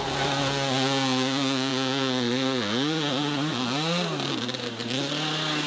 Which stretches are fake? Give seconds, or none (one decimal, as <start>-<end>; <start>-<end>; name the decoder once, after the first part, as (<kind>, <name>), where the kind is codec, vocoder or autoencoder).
none